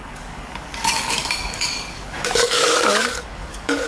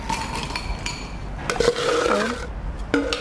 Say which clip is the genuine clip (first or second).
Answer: second